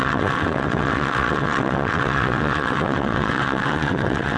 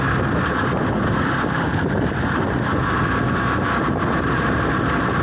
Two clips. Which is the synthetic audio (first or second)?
first